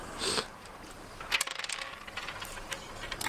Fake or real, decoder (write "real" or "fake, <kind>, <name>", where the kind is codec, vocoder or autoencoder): real